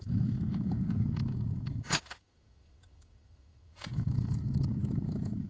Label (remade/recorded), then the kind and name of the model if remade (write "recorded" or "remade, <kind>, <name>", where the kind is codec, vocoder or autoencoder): remade, autoencoder, DAC-VAE